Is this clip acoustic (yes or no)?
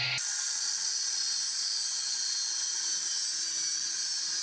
yes